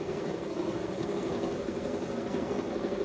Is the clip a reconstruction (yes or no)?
yes